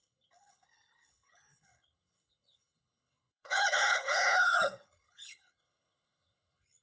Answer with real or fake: fake